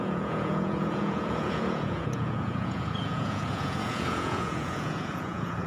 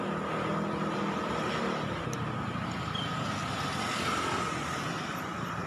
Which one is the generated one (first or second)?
first